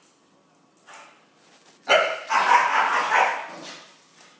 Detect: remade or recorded recorded